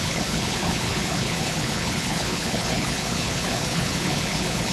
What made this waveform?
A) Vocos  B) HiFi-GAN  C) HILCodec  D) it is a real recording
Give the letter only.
C